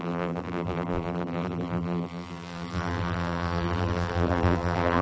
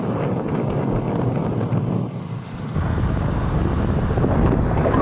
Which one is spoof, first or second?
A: first